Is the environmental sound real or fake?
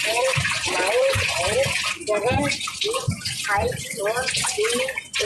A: real